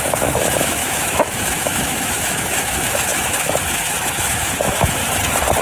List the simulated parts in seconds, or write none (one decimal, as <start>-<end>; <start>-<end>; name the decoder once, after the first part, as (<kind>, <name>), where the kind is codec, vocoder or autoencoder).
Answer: 0.0-5.0 (autoencoder, DAC-VAE)